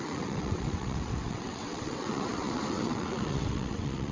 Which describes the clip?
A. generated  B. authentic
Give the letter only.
A